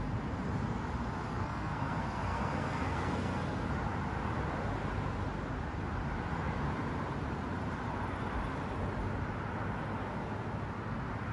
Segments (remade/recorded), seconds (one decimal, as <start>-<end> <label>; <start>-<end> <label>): 0.0-1.3 recorded; 1.3-3.7 remade; 3.7-11.3 recorded